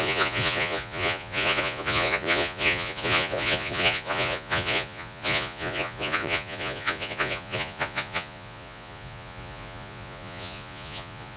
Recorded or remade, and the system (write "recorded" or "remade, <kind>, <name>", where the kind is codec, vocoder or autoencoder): remade, vocoder, Vocos